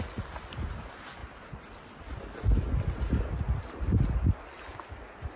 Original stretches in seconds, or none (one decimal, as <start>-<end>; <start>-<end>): 0.0-5.4